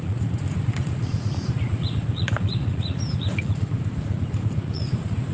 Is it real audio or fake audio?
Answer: fake